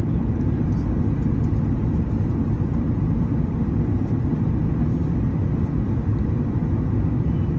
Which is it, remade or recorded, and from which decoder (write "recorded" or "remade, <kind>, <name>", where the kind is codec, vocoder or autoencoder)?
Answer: remade, vocoder, BigVGAN v2